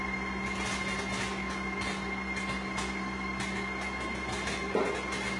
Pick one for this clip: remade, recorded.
recorded